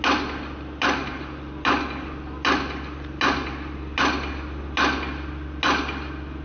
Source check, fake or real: real